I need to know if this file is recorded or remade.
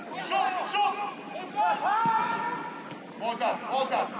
recorded